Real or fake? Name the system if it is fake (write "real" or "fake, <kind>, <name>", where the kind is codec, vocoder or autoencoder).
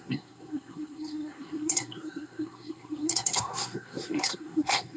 fake, codec, SNAC